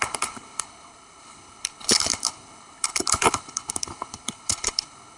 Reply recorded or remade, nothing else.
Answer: remade